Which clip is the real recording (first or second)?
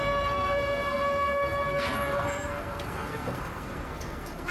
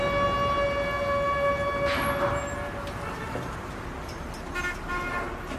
second